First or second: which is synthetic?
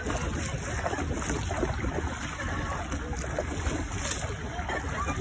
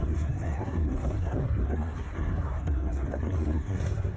second